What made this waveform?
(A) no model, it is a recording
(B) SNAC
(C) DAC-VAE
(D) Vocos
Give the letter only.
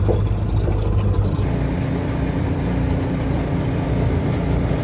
A